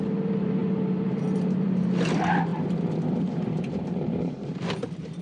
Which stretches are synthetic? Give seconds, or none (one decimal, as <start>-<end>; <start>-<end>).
0.0-5.2